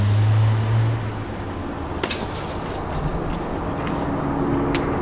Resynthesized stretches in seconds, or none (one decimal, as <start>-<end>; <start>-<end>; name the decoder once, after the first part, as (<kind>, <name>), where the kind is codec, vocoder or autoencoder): none